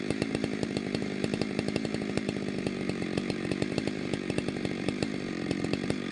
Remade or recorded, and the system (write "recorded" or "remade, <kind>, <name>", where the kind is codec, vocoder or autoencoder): remade, vocoder, BigVGAN v2